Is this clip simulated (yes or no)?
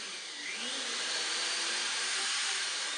yes